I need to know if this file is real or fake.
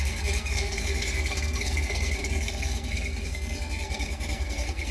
fake